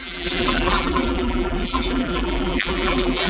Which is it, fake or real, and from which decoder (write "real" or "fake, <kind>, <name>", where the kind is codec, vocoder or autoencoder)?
fake, vocoder, BigVGAN v2